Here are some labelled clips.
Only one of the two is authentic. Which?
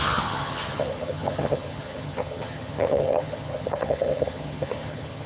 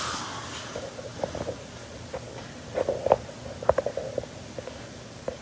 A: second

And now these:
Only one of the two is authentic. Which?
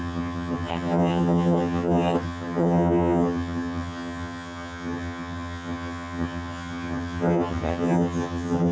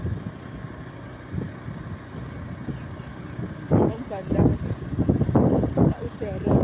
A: second